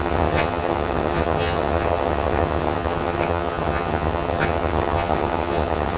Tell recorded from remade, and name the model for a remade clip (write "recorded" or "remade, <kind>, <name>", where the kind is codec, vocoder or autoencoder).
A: remade, vocoder, HiFi-GAN